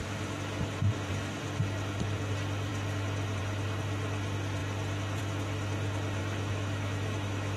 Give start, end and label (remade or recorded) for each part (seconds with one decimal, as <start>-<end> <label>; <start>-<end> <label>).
0.0-6.2 recorded; 6.2-7.6 remade

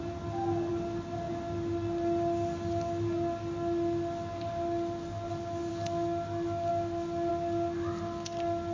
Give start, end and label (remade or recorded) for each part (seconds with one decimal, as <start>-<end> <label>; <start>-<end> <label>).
0.0-8.7 recorded

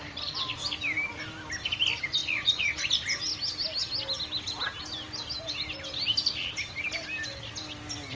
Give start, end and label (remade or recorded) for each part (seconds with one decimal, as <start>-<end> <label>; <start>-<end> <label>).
0.0-2.2 recorded; 2.2-2.9 remade; 2.9-8.1 recorded